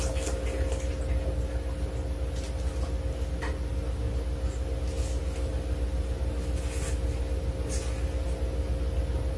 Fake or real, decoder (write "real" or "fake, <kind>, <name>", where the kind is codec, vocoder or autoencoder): real